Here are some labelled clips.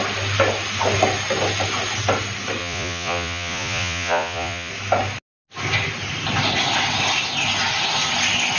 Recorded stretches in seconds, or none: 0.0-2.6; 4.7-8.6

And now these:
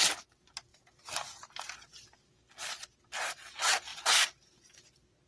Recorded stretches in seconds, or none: 0.0-5.3

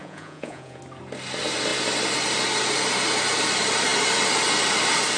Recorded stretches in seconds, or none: 0.8-5.2

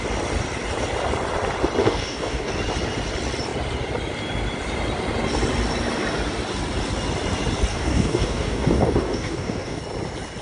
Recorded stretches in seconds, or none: 0.0-1.8; 2.5-7.7; 9.8-10.4

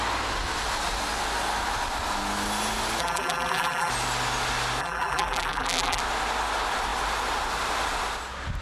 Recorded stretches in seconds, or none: 0.0-3.0; 3.9-4.8; 6.0-8.6